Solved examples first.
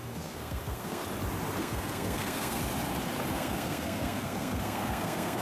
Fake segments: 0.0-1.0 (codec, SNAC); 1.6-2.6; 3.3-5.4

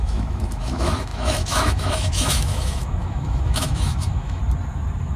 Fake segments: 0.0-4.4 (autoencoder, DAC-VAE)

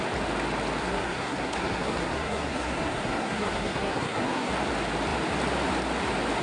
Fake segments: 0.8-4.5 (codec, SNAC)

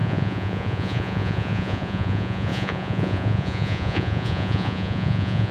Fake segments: 0.0-5.5 (vocoder, Vocos)

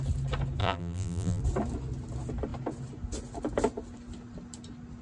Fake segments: 0.6-1.4 (vocoder, BigVGAN v2)